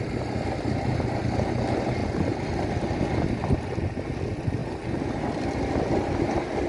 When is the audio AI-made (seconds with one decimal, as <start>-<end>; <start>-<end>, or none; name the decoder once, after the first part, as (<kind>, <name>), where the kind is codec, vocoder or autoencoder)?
none